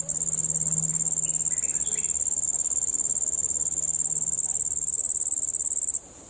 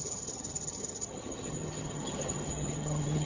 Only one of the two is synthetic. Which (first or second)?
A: second